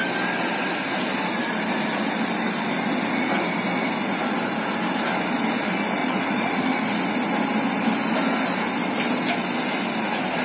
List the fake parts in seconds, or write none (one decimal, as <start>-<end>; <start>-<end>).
6.0-6.8